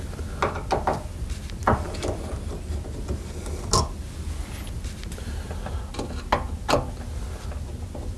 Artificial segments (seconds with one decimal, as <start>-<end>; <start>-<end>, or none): none